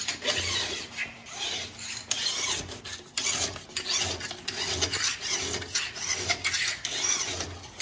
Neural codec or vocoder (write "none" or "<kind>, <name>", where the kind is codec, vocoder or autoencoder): none